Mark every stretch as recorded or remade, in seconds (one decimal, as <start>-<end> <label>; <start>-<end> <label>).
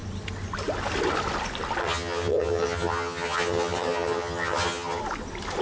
0.0-1.8 recorded; 1.8-5.0 remade; 5.0-5.6 recorded